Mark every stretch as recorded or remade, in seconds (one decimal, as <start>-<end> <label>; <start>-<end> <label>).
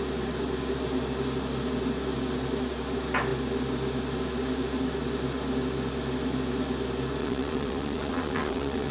0.0-7.2 recorded; 7.2-8.9 remade